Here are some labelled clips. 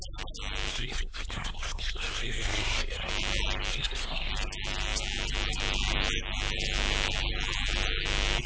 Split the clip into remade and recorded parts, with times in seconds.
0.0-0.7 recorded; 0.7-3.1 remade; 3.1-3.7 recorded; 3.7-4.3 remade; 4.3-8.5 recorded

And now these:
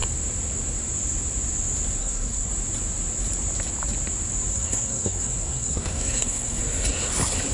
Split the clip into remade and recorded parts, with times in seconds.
0.0-2.0 recorded; 2.0-2.5 remade; 2.5-4.5 recorded; 4.5-6.6 remade; 6.6-7.5 recorded

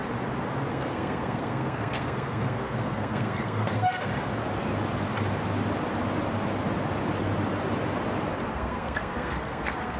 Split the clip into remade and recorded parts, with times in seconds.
0.0-0.7 recorded; 0.7-4.1 remade; 4.1-8.5 recorded; 8.5-10.0 remade